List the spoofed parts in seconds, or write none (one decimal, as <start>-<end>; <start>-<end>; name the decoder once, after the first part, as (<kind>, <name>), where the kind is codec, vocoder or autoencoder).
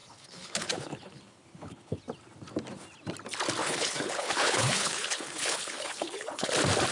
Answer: 0.0-2.0 (codec, HILCodec); 3.6-6.5